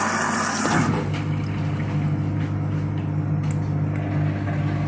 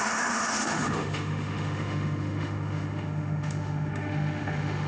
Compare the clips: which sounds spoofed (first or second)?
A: second